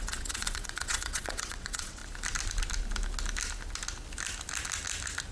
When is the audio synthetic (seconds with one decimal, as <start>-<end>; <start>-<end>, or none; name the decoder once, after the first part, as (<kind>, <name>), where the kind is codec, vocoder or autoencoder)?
0.0-2.0 (vocoder, WaveNeXt)